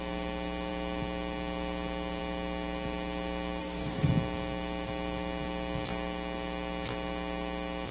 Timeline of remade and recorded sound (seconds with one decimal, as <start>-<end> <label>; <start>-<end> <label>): 0.0-3.6 recorded; 3.6-4.1 remade; 4.1-7.9 recorded